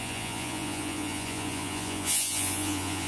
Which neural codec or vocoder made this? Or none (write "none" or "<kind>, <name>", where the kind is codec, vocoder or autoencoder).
vocoder, Vocos